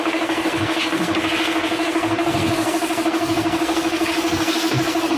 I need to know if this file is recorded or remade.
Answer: remade